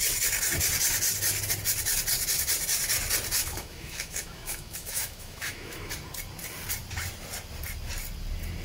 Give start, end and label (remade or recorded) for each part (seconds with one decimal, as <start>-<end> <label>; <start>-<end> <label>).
0.0-3.4 recorded; 3.4-5.9 remade; 5.9-8.6 recorded